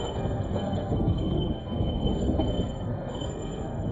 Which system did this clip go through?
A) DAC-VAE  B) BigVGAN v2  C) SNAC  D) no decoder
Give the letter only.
C